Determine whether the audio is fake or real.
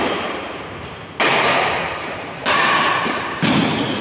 real